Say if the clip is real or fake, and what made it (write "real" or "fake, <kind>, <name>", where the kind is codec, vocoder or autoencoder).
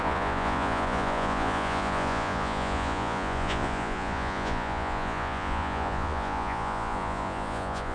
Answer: fake, vocoder, Vocos